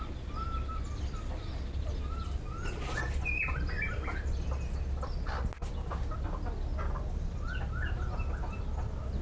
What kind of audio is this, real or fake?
real